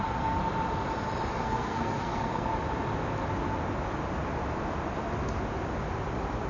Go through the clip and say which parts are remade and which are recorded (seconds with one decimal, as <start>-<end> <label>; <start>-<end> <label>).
0.0-0.4 remade; 0.4-1.3 recorded; 1.3-2.5 remade; 2.5-6.5 recorded